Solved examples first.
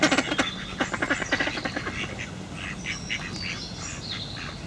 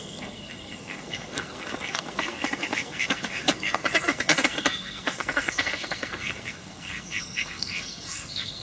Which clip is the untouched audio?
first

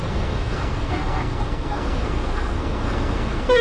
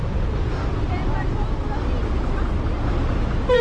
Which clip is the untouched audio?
second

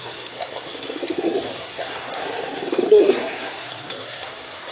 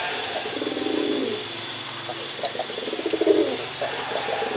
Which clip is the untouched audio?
second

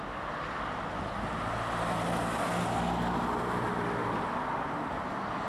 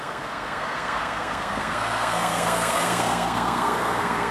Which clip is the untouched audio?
first